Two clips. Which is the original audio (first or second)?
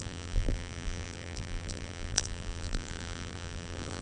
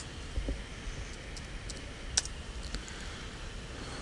second